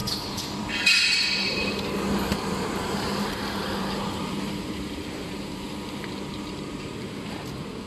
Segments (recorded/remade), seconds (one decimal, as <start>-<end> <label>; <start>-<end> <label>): 0.0-1.7 remade; 1.7-2.3 recorded; 2.3-5.7 remade; 5.7-6.3 recorded; 6.3-7.5 remade; 7.5-7.9 recorded